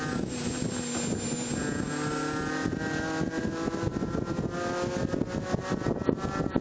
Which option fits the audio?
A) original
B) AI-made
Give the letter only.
A